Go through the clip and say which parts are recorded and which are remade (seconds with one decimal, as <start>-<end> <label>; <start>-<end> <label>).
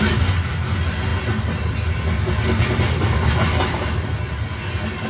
0.0-5.1 recorded